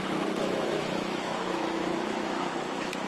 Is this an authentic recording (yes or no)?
no